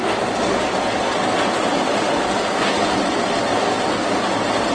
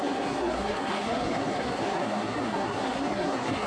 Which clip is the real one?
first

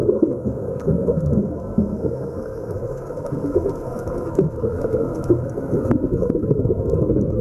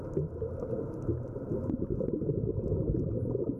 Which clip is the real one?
second